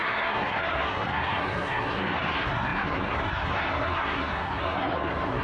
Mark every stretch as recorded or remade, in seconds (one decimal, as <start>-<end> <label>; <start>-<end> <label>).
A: 0.0-5.4 remade